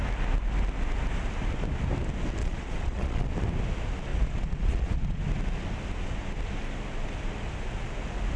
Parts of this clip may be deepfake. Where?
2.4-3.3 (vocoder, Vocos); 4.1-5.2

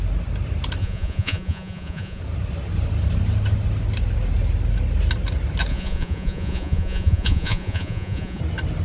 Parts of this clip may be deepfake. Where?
0.8-2.2 (vocoder, Vocos); 5.7-8.4

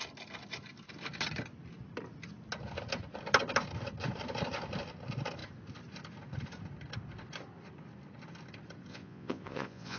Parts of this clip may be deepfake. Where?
8.9-10.0 (vocoder, Vocos)

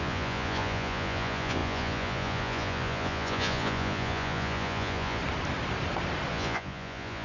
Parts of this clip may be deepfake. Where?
0.0-5.2 (vocoder, Vocos); 6.3-7.2

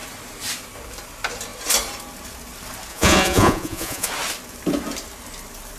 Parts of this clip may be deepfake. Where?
2.9-4.1 (vocoder, Vocos)

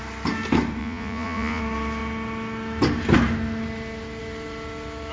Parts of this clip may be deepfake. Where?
0.8-1.6 (vocoder, Vocos)

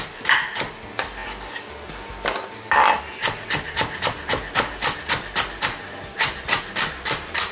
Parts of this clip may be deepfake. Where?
none